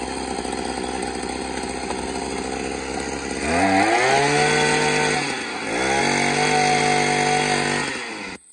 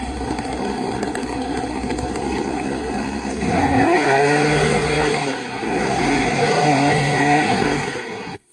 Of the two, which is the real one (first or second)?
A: first